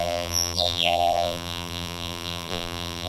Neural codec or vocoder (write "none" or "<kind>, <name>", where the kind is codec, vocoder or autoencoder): vocoder, BigVGAN v2